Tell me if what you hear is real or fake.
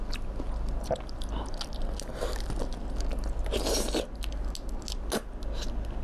real